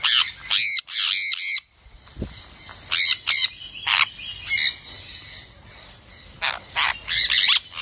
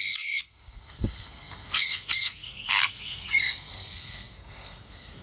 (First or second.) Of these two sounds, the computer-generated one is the second